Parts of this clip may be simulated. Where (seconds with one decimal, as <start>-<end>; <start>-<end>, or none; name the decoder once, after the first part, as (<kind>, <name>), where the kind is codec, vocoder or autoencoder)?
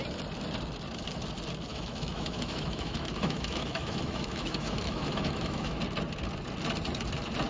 1.7-5.8 (autoencoder, DAC-VAE)